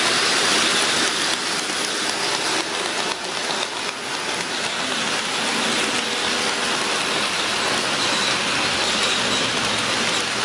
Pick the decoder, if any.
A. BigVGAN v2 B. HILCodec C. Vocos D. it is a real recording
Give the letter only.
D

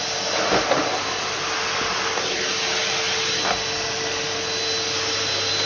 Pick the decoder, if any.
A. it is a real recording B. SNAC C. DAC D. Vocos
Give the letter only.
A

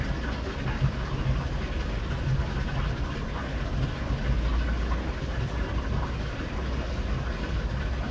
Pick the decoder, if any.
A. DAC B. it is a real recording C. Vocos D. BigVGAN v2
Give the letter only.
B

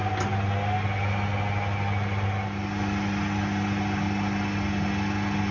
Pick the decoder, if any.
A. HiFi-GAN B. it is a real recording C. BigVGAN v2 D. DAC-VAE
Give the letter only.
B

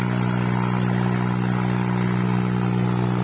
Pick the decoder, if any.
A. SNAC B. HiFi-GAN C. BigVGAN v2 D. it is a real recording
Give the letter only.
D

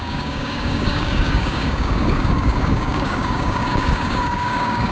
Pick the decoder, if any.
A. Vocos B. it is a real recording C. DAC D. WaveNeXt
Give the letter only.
C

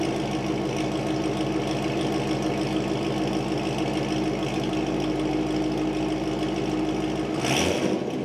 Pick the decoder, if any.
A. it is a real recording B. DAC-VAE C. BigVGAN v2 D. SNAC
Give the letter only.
A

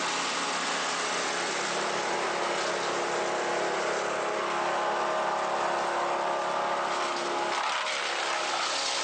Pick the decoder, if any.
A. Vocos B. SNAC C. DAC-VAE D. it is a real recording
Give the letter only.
D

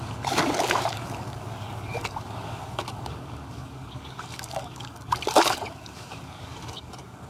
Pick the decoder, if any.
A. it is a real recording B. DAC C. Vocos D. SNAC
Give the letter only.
B